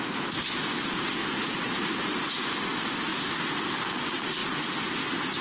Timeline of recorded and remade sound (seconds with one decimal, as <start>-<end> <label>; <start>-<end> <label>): 0.0-1.2 recorded; 1.2-2.5 remade; 2.5-5.4 recorded